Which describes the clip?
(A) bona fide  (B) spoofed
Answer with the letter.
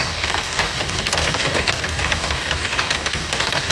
B